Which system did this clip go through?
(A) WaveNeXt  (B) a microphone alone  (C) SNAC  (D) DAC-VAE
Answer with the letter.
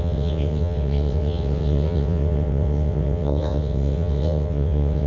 A